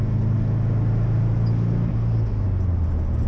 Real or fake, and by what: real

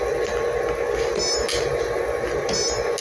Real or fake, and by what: real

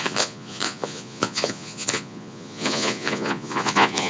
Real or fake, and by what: fake, vocoder, Vocos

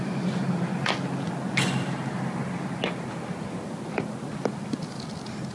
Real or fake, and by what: real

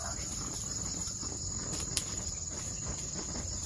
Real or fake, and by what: fake, vocoder, BigVGAN v2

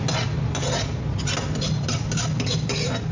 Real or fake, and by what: real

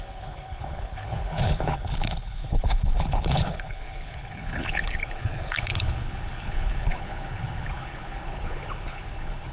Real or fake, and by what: fake, codec, HILCodec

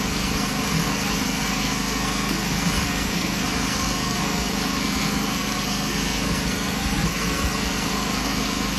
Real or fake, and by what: fake, codec, SNAC